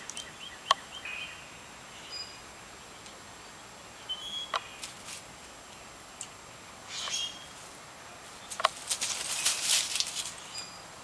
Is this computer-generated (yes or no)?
no